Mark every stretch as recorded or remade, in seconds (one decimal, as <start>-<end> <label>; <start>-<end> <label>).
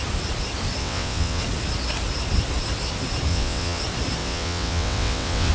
0.0-0.8 recorded; 0.8-1.4 remade; 1.4-3.3 recorded; 3.3-3.8 remade; 3.8-4.2 recorded; 4.2-5.5 remade